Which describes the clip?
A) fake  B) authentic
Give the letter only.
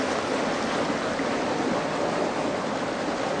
B